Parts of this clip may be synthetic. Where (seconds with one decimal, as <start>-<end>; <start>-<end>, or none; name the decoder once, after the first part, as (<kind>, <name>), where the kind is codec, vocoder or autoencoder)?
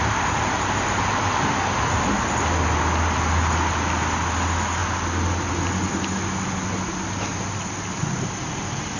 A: none